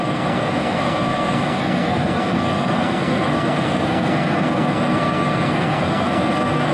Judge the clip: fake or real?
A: fake